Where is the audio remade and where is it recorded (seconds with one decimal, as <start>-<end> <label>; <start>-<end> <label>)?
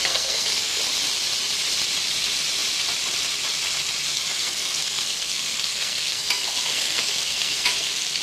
0.0-0.8 remade; 0.8-4.1 recorded; 4.1-8.2 remade